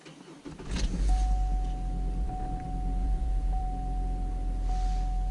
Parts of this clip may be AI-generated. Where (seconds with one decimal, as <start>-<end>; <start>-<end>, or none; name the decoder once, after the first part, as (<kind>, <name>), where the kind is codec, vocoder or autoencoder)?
3.0-3.6 (vocoder, Vocos)